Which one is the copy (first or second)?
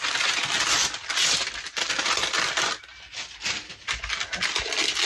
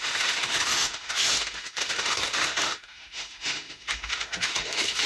second